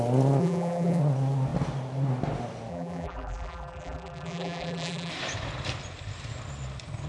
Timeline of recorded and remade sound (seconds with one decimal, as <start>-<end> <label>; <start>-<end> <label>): 0.0-0.4 recorded; 0.4-1.0 remade; 1.0-2.7 recorded; 2.7-5.1 remade; 5.1-7.1 recorded